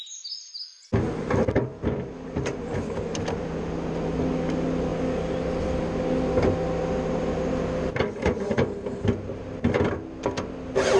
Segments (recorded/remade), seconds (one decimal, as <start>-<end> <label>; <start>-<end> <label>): 0.0-11.0 recorded